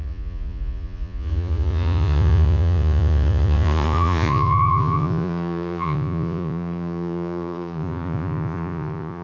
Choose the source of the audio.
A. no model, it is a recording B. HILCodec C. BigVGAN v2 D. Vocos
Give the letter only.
D